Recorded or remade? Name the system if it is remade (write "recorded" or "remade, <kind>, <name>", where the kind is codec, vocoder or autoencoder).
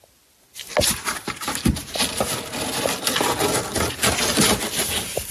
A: recorded